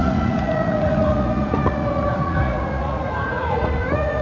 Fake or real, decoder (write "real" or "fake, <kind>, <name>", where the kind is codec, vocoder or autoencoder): fake, vocoder, Vocos